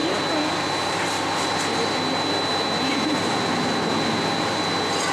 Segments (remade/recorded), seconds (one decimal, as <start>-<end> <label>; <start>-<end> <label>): 0.0-5.1 recorded